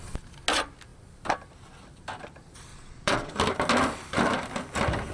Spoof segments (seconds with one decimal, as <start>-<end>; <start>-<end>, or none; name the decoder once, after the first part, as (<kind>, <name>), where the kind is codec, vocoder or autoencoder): 2.7-3.3 (vocoder, Vocos)